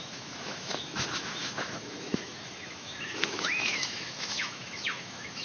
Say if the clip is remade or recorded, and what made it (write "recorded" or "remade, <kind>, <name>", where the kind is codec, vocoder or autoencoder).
remade, autoencoder, DAC-VAE